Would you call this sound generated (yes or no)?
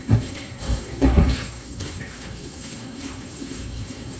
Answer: yes